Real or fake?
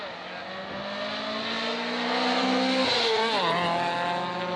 real